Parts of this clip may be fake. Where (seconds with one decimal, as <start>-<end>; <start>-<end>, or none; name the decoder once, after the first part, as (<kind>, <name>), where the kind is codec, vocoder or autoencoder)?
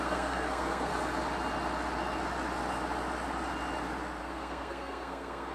0.0-0.9 (codec, SNAC); 4.2-5.5